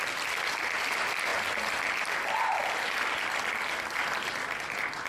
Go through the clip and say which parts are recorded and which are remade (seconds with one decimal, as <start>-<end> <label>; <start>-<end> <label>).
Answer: 0.0-5.1 recorded